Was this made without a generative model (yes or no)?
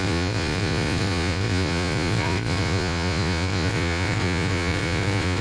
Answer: no